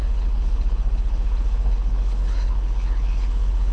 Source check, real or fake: fake